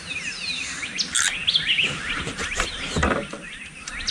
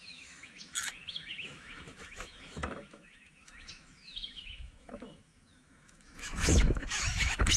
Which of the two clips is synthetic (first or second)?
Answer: second